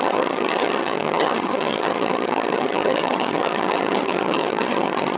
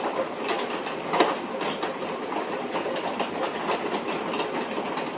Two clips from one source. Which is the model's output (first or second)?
first